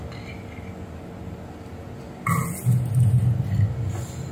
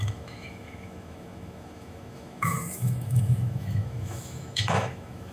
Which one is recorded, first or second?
first